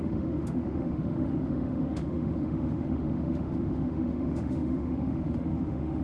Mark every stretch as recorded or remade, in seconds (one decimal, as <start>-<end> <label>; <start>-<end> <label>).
0.0-6.0 remade